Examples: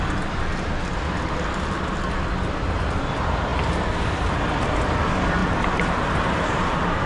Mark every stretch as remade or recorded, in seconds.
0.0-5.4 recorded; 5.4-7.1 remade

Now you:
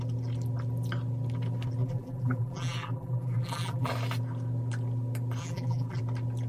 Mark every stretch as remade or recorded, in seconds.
0.0-1.8 recorded; 1.8-3.9 remade; 3.9-5.4 recorded; 5.4-6.0 remade; 6.0-6.5 recorded

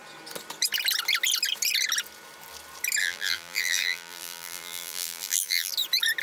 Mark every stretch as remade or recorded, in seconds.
0.0-3.0 recorded; 3.0-5.7 remade; 5.7-6.2 recorded

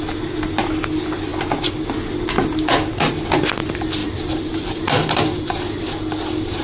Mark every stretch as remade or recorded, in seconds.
0.0-4.0 recorded; 4.0-5.2 remade; 5.2-6.6 recorded

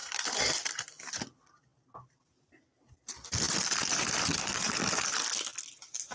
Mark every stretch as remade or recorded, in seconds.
0.0-1.0 remade; 1.0-6.1 recorded

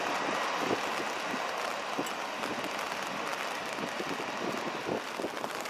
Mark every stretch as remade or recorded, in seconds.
0.0-5.7 recorded

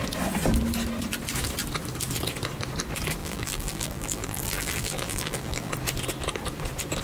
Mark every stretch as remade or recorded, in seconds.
0.0-3.2 recorded; 3.2-5.7 remade; 5.7-7.0 recorded